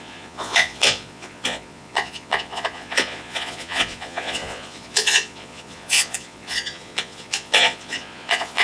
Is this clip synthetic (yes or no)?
yes